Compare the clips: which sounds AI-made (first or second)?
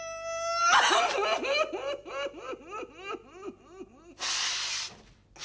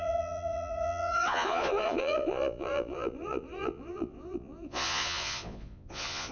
second